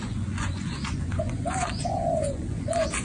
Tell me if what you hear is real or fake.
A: fake